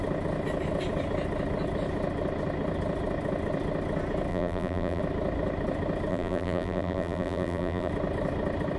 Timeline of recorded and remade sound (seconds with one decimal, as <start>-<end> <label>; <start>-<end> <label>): 0.0-4.3 recorded; 4.3-5.0 remade; 5.0-6.1 recorded; 6.1-7.9 remade; 7.9-8.8 recorded